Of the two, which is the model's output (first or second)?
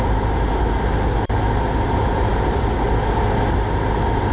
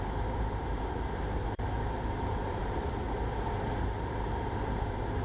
second